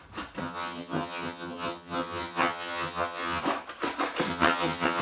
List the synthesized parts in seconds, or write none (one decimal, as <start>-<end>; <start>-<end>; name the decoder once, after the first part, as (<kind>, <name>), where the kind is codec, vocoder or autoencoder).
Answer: 0.4-3.4 (vocoder, HiFi-GAN); 4.3-5.0